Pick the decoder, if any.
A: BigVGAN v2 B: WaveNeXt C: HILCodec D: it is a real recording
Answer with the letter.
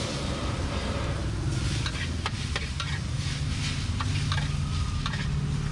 D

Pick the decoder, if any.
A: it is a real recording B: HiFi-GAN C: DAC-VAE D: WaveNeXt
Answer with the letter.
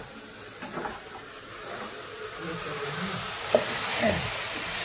A